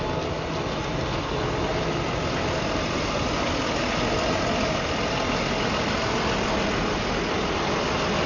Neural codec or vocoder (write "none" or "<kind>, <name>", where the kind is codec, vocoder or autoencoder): none